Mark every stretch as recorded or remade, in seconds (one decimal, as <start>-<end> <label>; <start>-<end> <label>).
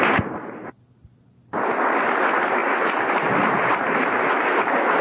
0.0-5.0 recorded